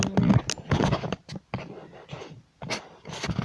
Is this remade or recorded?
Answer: recorded